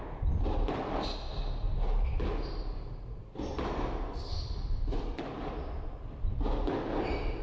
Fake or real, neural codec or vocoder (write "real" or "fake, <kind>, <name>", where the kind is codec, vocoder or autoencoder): real